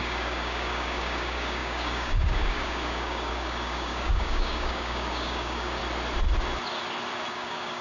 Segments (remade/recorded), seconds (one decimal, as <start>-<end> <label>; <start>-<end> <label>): 0.0-5.8 remade; 5.8-7.3 recorded; 7.3-7.8 remade